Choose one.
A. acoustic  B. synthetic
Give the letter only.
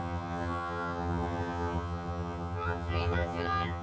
B